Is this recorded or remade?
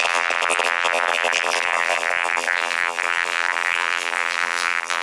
remade